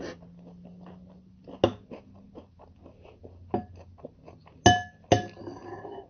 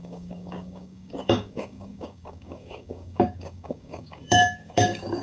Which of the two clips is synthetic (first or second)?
second